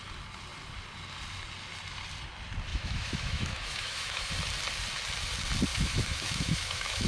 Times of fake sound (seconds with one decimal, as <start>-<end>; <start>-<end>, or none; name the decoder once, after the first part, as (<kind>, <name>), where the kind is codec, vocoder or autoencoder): 2.7-4.3 (autoencoder, DAC-VAE); 5.7-7.1